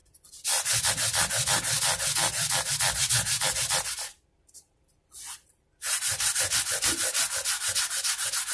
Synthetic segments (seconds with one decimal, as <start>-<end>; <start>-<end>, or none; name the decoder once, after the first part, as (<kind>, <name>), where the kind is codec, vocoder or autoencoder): none